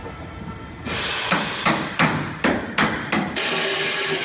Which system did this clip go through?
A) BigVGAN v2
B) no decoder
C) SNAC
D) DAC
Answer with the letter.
A